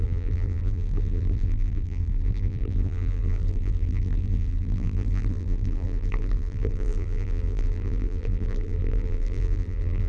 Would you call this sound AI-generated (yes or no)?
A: yes